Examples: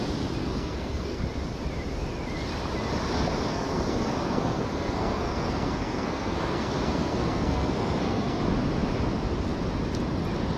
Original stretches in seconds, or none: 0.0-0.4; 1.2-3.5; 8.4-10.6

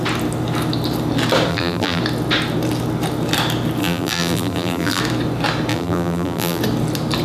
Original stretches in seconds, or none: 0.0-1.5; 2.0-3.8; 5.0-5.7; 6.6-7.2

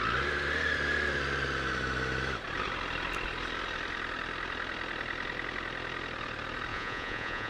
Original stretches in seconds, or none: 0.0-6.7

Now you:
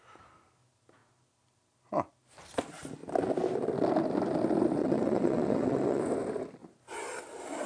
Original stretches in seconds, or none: 0.0-4.8; 6.0-7.7

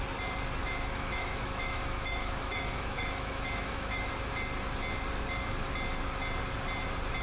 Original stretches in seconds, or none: 0.0-0.6; 4.1-7.2

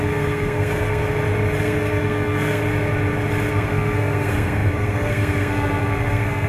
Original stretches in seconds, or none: 1.0-1.6; 2.6-3.5